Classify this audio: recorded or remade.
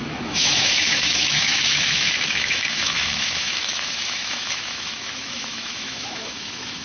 remade